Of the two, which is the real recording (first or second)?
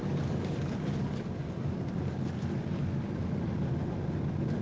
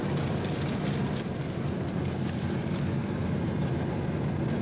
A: second